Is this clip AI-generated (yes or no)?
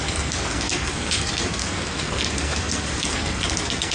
yes